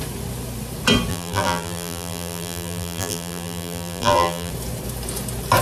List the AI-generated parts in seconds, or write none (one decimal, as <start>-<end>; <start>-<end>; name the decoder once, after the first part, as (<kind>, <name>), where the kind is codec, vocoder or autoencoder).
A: 1.1-4.5 (vocoder, BigVGAN v2)